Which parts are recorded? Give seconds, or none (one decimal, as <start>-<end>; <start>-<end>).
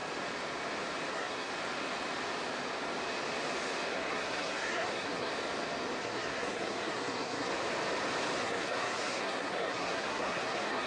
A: 0.0-1.1; 1.5-3.9; 5.3-6.0; 7.5-8.4